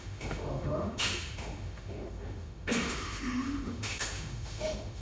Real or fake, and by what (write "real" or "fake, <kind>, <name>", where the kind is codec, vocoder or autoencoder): fake, autoencoder, DAC-VAE